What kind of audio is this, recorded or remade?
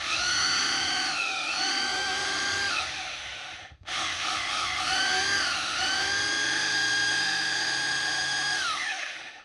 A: remade